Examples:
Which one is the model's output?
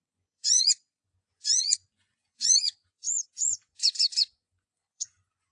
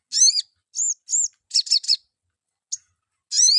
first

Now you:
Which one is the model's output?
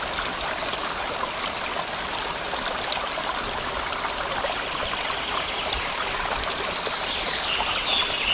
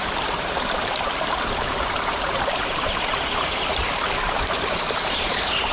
second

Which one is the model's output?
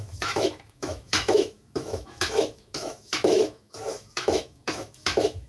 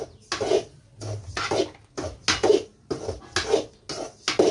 first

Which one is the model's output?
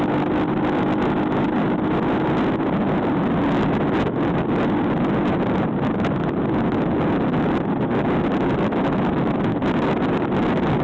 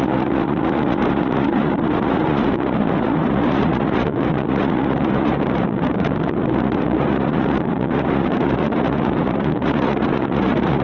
second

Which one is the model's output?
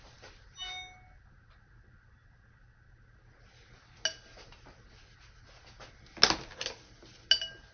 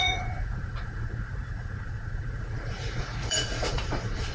second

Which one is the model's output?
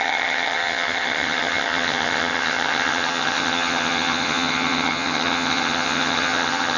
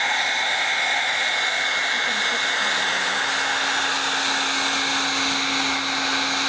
first